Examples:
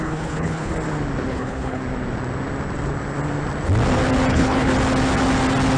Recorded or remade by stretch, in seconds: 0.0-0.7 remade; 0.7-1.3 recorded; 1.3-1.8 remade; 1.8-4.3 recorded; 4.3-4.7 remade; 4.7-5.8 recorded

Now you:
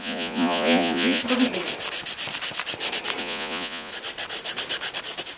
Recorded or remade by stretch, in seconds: 0.0-1.2 remade; 1.2-3.2 recorded; 3.2-3.9 remade; 3.9-5.4 recorded

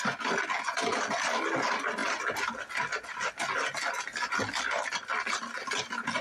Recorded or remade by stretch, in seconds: 0.0-6.2 recorded

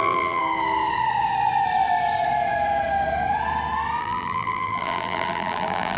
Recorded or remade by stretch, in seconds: 0.0-0.4 remade; 0.4-4.0 recorded; 4.0-6.0 remade

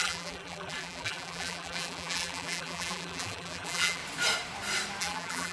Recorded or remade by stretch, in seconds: 0.0-4.0 remade; 4.0-5.0 recorded; 5.0-5.5 remade

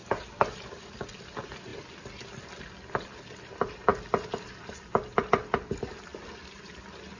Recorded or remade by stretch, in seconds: 0.0-1.7 remade; 1.7-2.6 recorded; 2.6-3.9 remade; 3.9-5.9 recorded; 5.9-7.2 remade

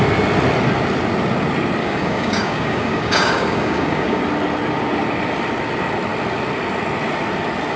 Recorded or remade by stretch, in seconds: 0.0-1.8 recorded; 1.8-4.2 remade; 4.2-7.8 recorded